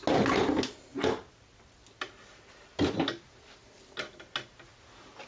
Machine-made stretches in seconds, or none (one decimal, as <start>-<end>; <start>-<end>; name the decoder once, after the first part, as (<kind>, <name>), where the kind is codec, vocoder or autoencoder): 3.6-4.3 (vocoder, BigVGAN v2)

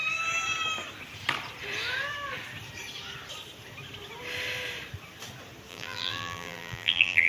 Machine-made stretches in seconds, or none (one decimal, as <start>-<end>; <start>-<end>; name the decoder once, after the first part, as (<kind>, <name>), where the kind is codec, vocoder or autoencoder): 5.7-7.3 (vocoder, BigVGAN v2)

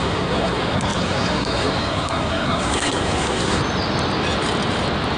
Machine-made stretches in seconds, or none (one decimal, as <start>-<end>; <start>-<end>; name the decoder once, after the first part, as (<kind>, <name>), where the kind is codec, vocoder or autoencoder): 0.0-3.6 (codec, SNAC)

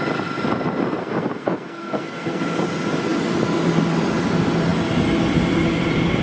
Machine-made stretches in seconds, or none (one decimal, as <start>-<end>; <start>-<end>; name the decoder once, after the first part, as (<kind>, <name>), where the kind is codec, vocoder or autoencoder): 1.0-2.4 (codec, SNAC)

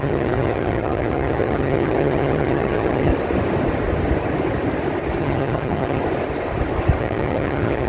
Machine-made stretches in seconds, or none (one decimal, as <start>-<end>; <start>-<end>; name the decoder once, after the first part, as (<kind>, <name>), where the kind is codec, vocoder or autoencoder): 0.0-3.1 (vocoder, HiFi-GAN); 5.2-6.0; 7.0-7.9

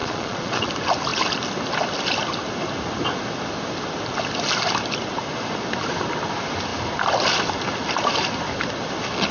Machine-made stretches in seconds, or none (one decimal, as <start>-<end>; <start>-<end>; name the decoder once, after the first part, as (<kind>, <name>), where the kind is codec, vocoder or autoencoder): 0.0-0.7 (vocoder, Vocos)

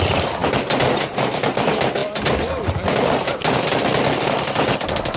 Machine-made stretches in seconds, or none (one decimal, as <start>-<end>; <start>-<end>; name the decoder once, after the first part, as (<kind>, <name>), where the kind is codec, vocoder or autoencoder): none

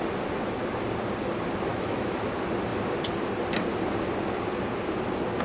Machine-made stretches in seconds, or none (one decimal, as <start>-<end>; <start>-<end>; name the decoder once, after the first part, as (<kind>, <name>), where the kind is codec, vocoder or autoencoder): 1.7-2.3 (autoencoder, DAC-VAE)